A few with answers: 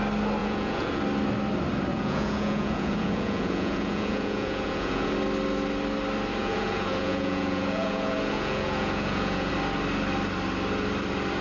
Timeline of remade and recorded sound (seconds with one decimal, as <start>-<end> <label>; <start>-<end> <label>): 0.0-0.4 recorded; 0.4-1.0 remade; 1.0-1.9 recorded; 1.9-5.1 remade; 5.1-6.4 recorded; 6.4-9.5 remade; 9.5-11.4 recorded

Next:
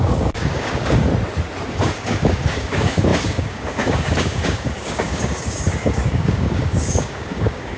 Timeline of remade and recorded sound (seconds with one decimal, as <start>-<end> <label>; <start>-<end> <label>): 0.0-1.1 remade; 1.1-1.7 recorded; 1.7-7.8 remade

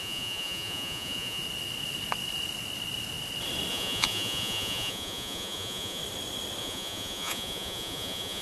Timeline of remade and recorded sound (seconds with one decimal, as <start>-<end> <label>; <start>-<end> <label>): 0.0-1.4 remade; 1.4-3.7 recorded; 3.7-6.0 remade; 6.0-6.6 recorded; 6.6-8.4 remade

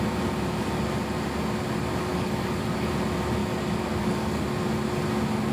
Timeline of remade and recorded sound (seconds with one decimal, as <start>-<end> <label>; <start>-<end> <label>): 0.0-2.1 recorded; 2.1-2.9 remade; 2.9-3.4 recorded; 3.4-4.4 remade; 4.4-5.5 recorded

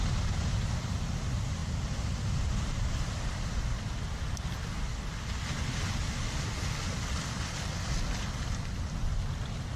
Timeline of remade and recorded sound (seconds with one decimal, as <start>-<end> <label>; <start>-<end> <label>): 0.0-9.8 recorded

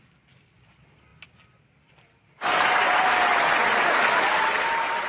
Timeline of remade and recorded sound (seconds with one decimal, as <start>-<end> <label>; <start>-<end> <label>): 0.0-5.1 recorded